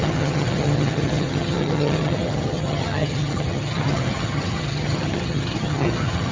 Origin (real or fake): fake